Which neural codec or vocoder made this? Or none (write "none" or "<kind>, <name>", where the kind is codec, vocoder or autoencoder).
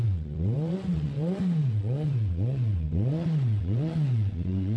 vocoder, WaveNeXt